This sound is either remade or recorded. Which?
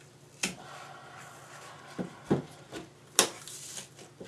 recorded